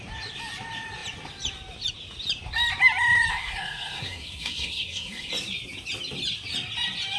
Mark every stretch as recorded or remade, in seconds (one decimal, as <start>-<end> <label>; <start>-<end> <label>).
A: 0.0-3.3 recorded; 3.3-5.3 remade; 5.3-7.2 recorded